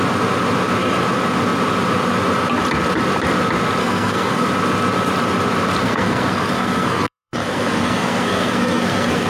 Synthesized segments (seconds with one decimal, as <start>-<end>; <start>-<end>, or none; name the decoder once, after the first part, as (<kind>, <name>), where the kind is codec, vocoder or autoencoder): 3.8-4.5 (codec, SNAC); 5.8-9.3